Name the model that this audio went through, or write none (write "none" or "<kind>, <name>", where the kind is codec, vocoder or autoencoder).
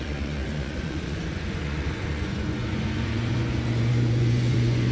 vocoder, Vocos